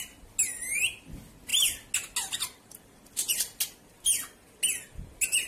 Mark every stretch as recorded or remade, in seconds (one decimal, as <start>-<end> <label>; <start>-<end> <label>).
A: 0.0-5.5 recorded